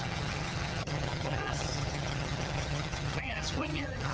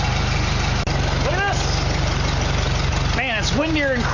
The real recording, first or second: second